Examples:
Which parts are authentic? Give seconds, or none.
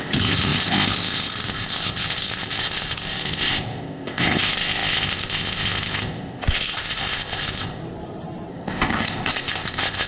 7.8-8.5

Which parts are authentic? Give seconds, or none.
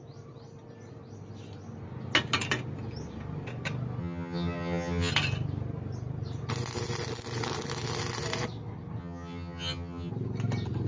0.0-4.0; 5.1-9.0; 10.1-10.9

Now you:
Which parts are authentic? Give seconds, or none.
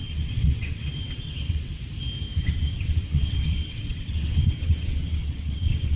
1.8-2.3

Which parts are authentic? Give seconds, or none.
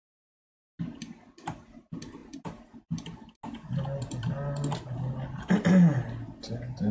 0.0-6.9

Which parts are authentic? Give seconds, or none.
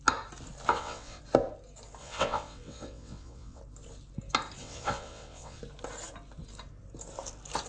0.0-0.7; 1.2-2.0; 3.6-4.6; 5.6-7.7